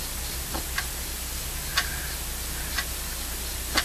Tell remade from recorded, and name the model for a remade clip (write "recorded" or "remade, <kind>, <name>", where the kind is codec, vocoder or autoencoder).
recorded